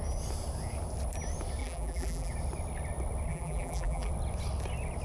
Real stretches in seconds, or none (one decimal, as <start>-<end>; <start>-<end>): 0.0-1.6; 2.3-3.3; 4.1-5.0